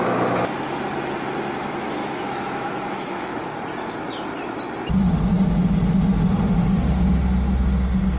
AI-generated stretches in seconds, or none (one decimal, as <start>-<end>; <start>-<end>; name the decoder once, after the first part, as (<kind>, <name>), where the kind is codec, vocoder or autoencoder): 2.0-3.3 (autoencoder, DAC-VAE)